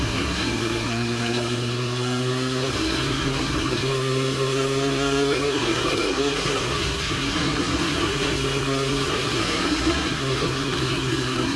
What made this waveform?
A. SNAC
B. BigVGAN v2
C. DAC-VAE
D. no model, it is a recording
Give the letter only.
A